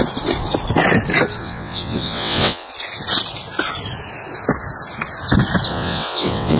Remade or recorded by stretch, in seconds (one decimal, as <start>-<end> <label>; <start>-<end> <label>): 0.0-1.4 recorded; 1.4-2.7 remade; 2.7-5.7 recorded; 5.7-6.6 remade